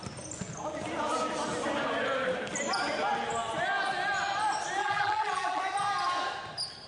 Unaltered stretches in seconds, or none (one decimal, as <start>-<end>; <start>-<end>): 0.0-4.8; 5.6-6.9